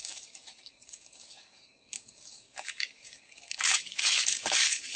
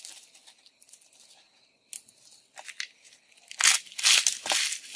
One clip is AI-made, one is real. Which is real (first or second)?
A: second